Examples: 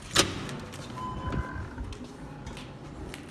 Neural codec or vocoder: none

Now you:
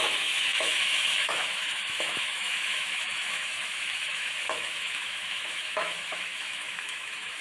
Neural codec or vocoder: autoencoder, DAC-VAE